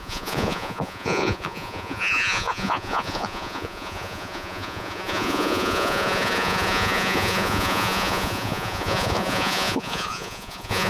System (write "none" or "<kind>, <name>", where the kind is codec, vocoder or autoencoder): vocoder, Vocos